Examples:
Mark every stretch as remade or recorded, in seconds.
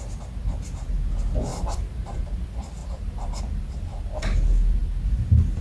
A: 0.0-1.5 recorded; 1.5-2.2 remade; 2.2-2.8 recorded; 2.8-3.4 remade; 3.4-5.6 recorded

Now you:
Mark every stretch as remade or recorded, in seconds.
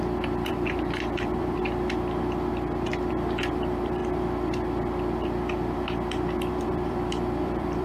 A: 0.0-1.6 remade; 1.6-3.1 recorded; 3.1-4.0 remade; 4.0-6.5 recorded; 6.5-7.8 remade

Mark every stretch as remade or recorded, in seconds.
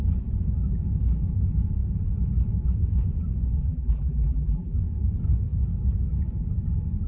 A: 0.0-3.6 recorded; 3.6-4.8 remade; 4.8-7.1 recorded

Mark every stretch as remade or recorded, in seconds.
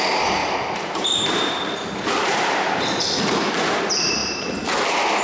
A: 0.0-0.4 recorded; 0.4-3.5 remade; 3.5-5.2 recorded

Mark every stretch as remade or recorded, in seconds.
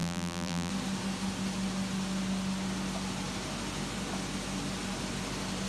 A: 0.0-0.7 remade; 0.7-5.7 recorded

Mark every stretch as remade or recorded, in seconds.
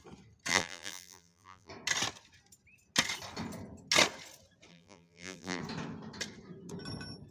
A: 0.0-0.5 recorded; 0.5-1.7 remade; 1.7-4.7 recorded; 4.7-5.6 remade; 5.6-7.3 recorded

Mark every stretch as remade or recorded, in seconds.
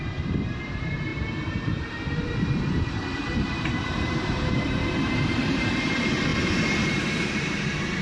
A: 0.0-8.0 remade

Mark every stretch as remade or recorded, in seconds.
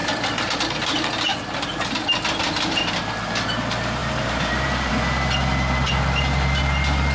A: 0.0-1.1 remade; 1.1-2.4 recorded; 2.4-3.0 remade; 3.0-4.0 recorded; 4.0-4.9 remade; 4.9-7.1 recorded